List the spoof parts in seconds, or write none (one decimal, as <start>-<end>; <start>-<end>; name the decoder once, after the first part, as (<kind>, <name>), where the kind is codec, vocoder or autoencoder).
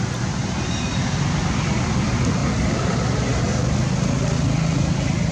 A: none